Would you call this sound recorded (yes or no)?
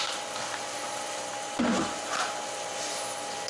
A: no